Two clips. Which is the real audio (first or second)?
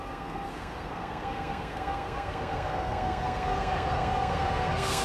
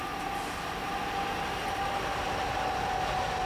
second